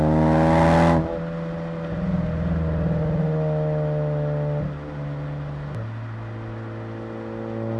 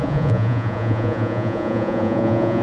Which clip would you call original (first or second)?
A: first